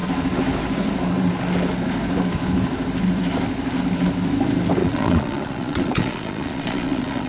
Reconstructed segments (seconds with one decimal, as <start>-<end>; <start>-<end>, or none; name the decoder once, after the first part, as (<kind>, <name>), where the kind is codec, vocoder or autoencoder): 4.8-7.3 (vocoder, Vocos)